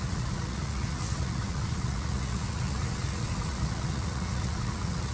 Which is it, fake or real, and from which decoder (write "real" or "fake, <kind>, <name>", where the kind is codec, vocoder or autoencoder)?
fake, vocoder, Vocos